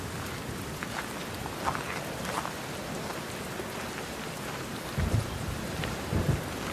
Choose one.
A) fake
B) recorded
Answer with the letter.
B